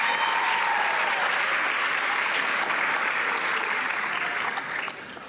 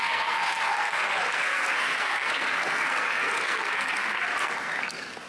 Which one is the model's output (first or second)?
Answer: second